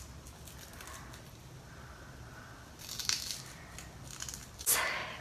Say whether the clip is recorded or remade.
recorded